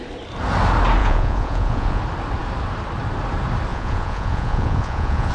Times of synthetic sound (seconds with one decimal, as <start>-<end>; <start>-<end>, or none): 1.0-2.0; 3.7-5.3